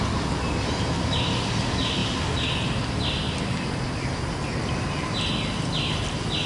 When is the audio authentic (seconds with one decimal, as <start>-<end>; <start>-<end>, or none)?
0.0-6.5